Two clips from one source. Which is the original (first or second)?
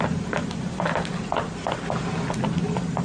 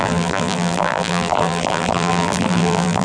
first